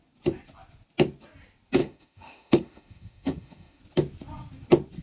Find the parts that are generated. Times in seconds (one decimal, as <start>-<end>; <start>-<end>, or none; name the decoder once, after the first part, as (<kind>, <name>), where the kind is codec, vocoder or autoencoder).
1.8-3.8 (autoencoder, DAC-VAE)

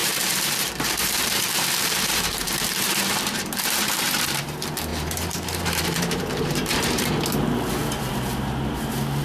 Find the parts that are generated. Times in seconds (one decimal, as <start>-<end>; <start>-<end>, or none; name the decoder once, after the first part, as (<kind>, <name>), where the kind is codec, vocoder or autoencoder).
0.0-4.5 (vocoder, BigVGAN v2); 4.9-7.1

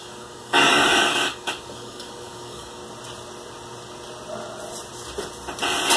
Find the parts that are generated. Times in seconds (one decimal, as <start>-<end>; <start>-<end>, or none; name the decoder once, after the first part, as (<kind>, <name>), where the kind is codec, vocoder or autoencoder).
0.0-2.8 (codec, DAC)

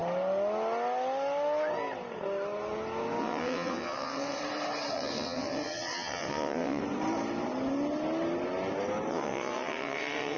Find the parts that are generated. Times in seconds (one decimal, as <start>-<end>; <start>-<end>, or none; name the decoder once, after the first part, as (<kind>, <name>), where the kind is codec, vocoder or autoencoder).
3.2-4.4 (vocoder, WaveNeXt); 4.9-6.8; 9.1-10.4

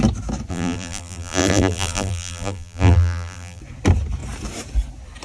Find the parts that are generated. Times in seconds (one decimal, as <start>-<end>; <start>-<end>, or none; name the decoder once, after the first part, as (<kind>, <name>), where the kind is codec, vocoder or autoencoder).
0.5-3.6 (vocoder, BigVGAN v2)

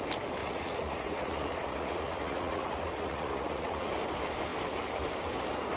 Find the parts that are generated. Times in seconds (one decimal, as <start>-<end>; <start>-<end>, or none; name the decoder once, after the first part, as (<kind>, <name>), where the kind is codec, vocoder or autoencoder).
0.4-3.9 (vocoder, Vocos)

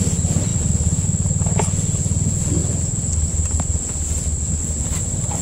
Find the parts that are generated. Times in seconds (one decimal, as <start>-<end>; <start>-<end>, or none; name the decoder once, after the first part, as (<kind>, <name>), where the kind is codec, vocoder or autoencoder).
none